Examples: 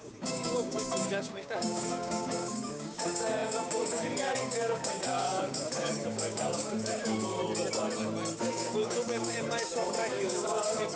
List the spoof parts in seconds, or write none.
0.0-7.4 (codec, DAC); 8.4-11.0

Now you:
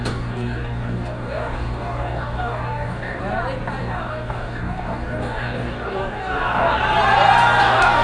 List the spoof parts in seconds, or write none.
0.0-3.2 (codec, DAC); 3.8-6.8; 7.6-8.0